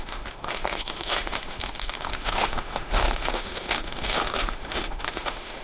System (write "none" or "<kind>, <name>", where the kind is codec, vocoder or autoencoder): autoencoder, DAC-VAE